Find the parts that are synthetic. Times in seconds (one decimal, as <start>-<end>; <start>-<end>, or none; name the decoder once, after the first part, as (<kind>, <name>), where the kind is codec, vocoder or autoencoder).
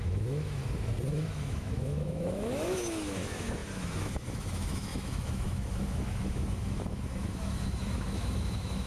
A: 0.0-0.6 (autoencoder, DAC-VAE); 1.1-8.9